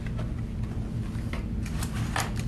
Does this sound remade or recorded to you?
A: recorded